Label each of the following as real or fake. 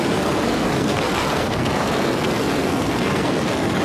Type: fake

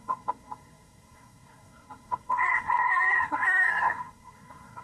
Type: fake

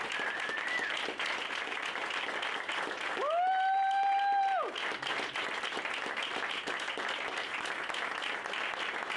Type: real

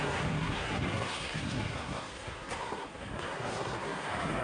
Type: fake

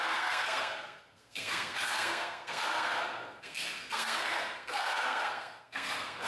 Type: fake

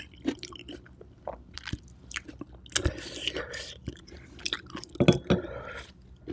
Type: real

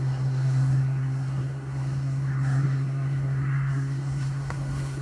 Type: fake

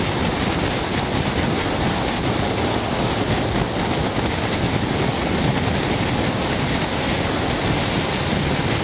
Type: real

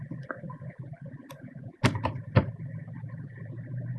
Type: real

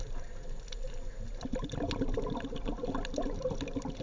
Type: real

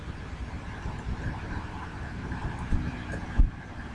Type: real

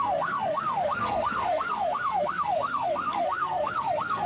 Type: fake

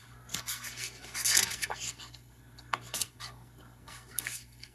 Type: fake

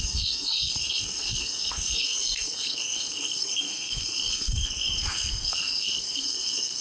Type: fake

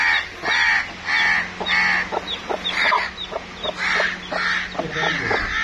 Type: real